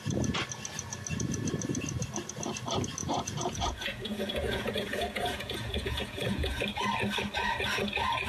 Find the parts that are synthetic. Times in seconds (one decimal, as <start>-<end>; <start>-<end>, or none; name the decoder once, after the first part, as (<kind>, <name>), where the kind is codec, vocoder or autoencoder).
3.0-6.6 (vocoder, Vocos)